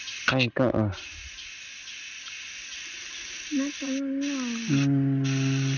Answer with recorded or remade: recorded